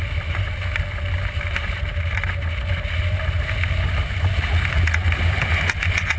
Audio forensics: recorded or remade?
recorded